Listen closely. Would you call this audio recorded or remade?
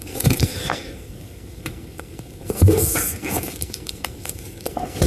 remade